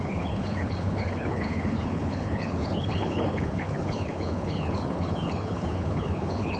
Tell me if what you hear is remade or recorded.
remade